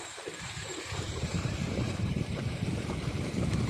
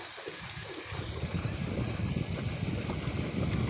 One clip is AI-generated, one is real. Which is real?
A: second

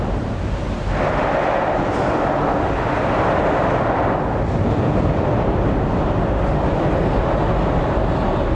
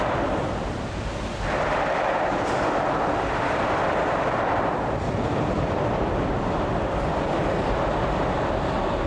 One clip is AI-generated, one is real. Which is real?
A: first